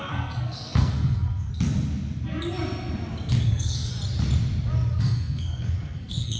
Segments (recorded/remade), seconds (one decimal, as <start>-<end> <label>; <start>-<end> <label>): 0.0-1.5 remade; 1.5-3.4 recorded; 3.4-3.9 remade; 3.9-5.0 recorded; 5.0-6.4 remade